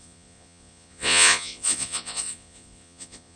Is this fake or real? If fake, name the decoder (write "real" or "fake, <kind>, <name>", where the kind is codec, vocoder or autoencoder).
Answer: fake, vocoder, Vocos